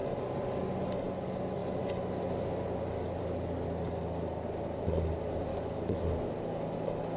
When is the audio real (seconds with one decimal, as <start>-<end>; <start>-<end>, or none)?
0.0-5.5; 6.3-7.2